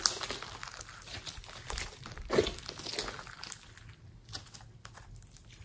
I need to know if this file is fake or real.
real